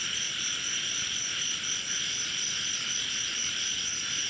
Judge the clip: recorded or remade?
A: remade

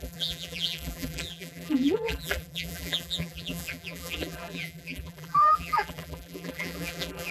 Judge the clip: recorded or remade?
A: remade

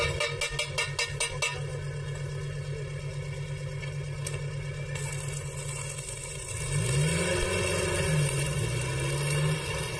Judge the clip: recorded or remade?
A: recorded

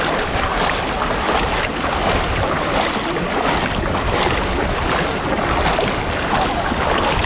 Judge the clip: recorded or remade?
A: recorded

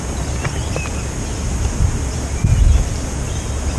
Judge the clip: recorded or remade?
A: recorded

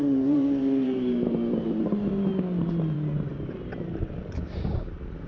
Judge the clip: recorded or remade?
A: remade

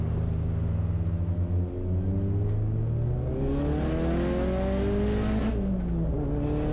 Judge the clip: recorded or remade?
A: recorded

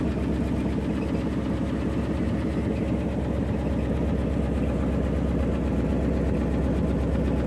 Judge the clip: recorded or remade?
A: recorded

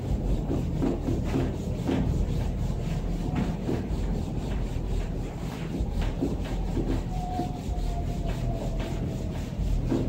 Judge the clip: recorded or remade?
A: remade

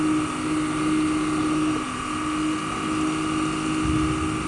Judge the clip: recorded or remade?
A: recorded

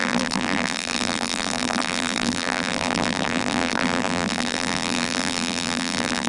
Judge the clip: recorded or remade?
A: remade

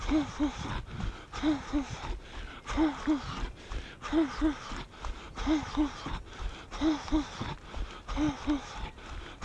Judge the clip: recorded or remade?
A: recorded